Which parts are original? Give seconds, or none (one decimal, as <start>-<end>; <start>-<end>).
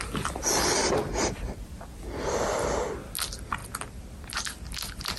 0.0-5.2